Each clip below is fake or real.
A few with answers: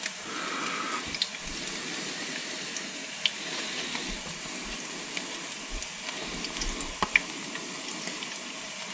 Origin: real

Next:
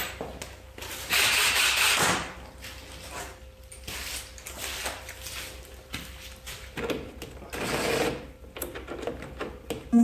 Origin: real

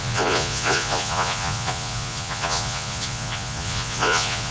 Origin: fake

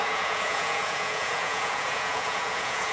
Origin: fake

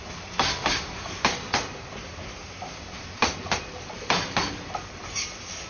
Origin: real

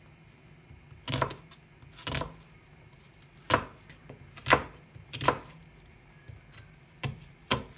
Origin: real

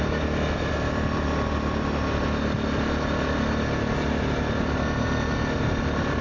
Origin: real